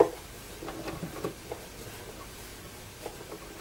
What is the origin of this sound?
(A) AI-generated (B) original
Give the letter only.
B